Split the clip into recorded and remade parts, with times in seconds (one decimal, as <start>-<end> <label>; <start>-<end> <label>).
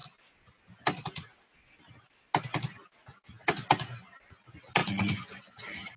0.0-4.8 recorded; 4.8-5.6 remade; 5.6-6.0 recorded